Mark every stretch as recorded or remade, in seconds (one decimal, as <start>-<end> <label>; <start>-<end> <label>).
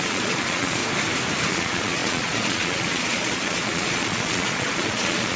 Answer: 0.0-0.8 remade; 0.8-1.5 recorded; 1.5-5.4 remade